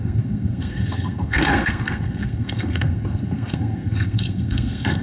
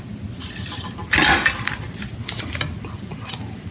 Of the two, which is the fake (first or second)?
first